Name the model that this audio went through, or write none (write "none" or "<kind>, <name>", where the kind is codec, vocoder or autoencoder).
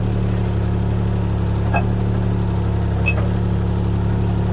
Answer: none